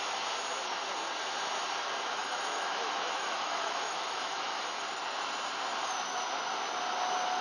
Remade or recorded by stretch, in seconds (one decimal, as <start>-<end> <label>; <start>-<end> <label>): 0.0-2.2 recorded; 2.2-4.6 remade; 4.6-7.4 recorded